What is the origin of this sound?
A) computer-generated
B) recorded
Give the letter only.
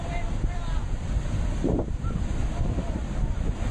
B